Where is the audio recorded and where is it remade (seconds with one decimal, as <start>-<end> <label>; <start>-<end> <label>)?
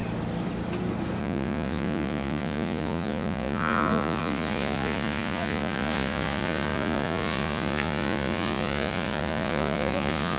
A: 0.0-1.2 recorded; 1.2-10.4 remade